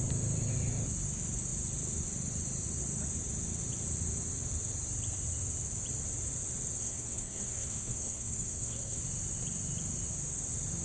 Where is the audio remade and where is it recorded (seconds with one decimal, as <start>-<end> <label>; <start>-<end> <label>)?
0.0-6.8 recorded; 6.8-9.0 remade; 9.0-10.8 recorded